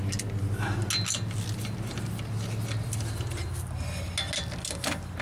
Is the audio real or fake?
real